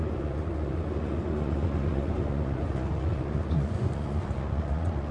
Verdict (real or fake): fake